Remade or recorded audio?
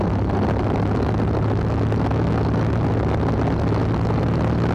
recorded